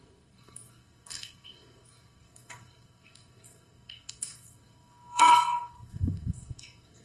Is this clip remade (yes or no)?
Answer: yes